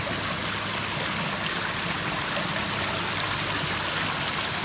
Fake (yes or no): no